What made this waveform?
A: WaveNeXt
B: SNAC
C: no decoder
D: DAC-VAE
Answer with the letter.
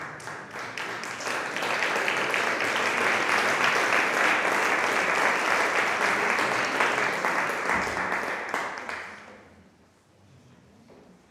C